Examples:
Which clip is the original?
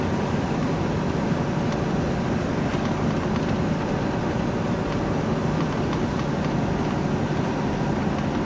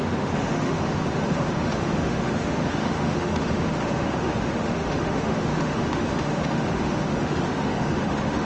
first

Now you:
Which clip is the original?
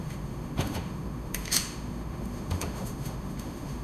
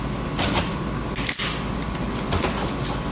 second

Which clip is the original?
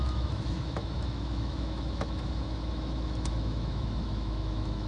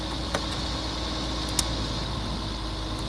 second